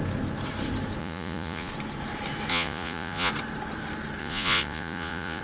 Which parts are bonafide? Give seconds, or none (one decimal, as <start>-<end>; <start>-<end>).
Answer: 0.0-1.0; 1.7-2.5; 3.3-4.2